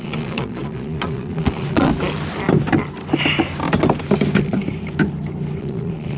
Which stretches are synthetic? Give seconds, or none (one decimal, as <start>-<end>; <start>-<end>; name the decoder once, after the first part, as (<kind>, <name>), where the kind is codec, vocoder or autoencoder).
0.0-1.9 (vocoder, Vocos); 5.6-6.2